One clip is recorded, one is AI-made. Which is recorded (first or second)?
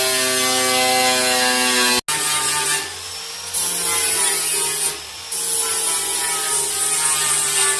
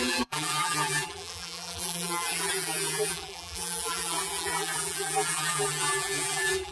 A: first